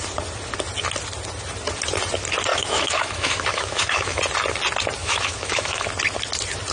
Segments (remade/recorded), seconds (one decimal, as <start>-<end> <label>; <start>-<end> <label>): 0.0-2.5 recorded; 2.5-4.2 remade; 4.2-5.0 recorded; 5.0-5.9 remade; 5.9-6.7 recorded